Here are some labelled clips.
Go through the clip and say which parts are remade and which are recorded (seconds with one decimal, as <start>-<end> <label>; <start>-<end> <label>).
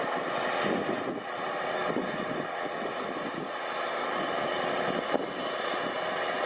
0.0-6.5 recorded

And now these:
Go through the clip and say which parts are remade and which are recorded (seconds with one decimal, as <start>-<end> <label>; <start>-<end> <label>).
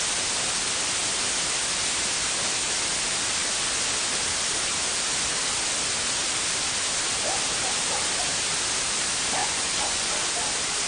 0.0-9.4 recorded; 9.4-10.1 remade; 10.1-10.9 recorded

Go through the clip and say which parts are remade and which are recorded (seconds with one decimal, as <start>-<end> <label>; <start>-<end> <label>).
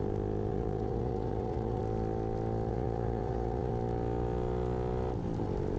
0.0-0.5 recorded; 0.5-1.8 remade; 1.8-2.7 recorded; 2.7-3.7 remade; 3.7-5.8 recorded